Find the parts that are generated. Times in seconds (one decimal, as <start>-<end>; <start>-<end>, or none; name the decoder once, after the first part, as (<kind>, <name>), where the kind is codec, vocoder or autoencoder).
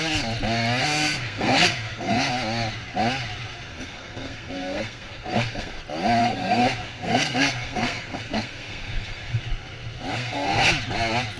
0.8-2.3 (codec, SNAC); 3.7-5.8; 6.2-9.4; 10.1-10.7